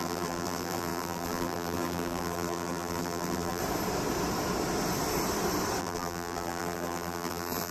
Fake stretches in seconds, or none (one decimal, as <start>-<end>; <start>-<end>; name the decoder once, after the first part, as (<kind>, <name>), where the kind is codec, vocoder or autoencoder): 0.0-3.6 (vocoder, BigVGAN v2); 5.8-7.7

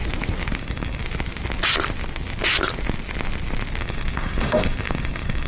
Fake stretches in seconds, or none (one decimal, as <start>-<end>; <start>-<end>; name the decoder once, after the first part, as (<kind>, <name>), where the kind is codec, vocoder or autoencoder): 0.6-1.0 (codec, DAC); 3.8-5.5

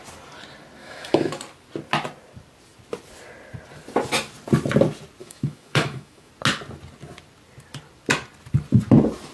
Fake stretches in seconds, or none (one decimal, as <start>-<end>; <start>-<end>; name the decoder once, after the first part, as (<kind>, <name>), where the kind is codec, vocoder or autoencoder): 0.8-1.4 (autoencoder, DAC-VAE); 5.2-6.3

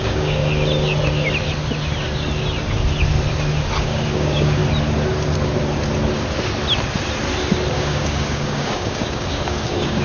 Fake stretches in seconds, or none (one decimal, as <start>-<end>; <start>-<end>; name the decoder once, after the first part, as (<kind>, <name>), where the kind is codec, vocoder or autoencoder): 0.0-0.4 (codec, DAC); 3.8-4.6; 7.7-10.0

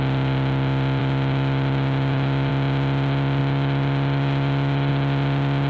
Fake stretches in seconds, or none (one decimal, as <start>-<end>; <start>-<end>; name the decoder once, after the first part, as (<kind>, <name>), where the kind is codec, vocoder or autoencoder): 1.0-2.5 (autoencoder, DAC-VAE); 3.4-4.9

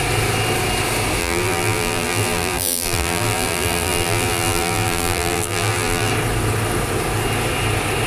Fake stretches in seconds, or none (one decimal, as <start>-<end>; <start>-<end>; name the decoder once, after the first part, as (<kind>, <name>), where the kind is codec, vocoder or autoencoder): 1.2-6.1 (vocoder, BigVGAN v2)

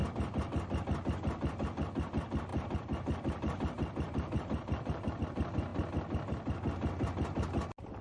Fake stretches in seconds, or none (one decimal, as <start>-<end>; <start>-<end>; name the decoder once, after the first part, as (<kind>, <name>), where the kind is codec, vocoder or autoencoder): 2.5-5.2 (vocoder, BigVGAN v2)